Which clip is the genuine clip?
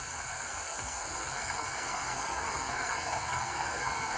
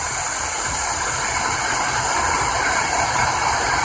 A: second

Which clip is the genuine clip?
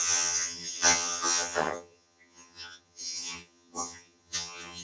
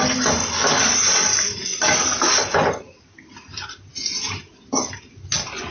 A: second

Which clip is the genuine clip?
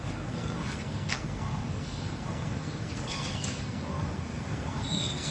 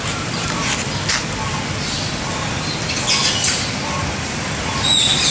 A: second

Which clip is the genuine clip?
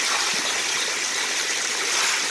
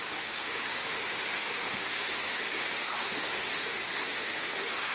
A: first